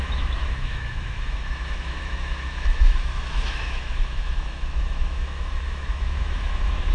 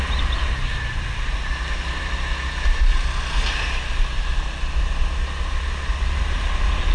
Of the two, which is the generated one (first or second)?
first